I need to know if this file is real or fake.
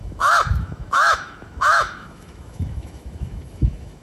fake